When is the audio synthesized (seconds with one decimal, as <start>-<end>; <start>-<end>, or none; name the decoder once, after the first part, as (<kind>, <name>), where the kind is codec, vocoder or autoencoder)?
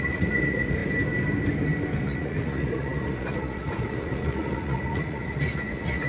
0.0-0.8 (vocoder, Vocos); 2.0-6.1